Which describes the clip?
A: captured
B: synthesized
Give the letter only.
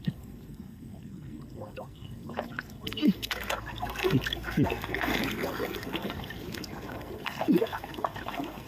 B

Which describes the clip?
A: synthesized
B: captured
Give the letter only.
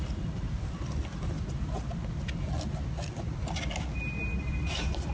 B